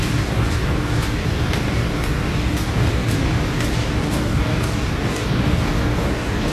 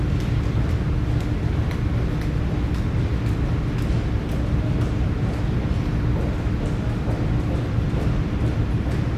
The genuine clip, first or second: second